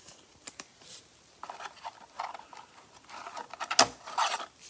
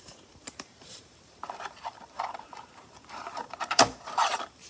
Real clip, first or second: first